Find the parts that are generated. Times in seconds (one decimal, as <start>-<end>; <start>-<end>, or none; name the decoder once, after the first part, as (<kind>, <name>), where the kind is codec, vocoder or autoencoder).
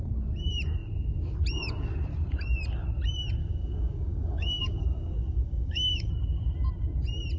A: 3.4-6.1 (codec, DAC)